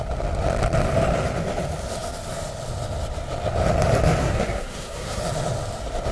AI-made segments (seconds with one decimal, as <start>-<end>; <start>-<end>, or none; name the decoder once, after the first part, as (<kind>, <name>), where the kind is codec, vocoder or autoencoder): 4.2-5.2 (codec, SNAC)